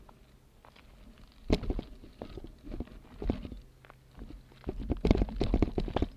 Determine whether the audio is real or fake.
real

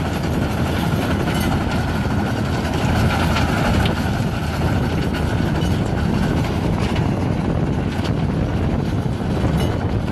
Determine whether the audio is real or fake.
real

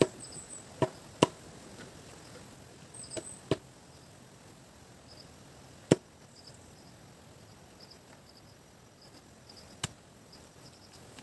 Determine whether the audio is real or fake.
real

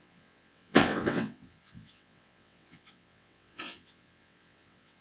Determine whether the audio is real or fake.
fake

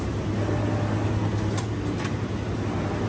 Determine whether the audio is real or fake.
real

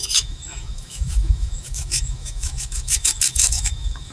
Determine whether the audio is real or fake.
fake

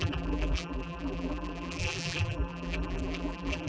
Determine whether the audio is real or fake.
fake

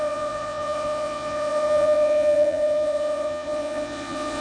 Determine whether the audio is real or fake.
fake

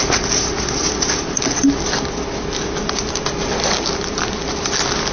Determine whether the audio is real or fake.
real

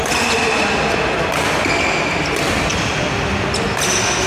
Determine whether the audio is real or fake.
real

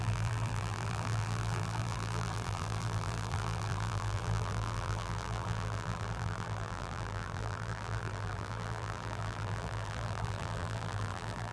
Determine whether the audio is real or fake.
fake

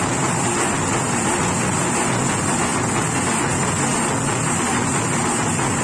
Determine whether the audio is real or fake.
real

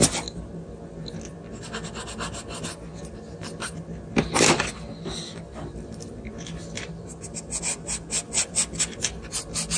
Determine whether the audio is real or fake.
real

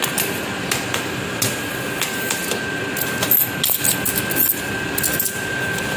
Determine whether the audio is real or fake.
real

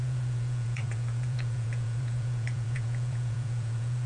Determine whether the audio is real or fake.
fake